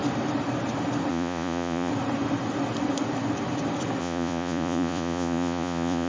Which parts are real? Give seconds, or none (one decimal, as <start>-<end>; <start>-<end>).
0.0-1.1; 1.9-4.0